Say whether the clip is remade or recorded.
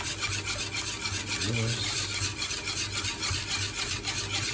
recorded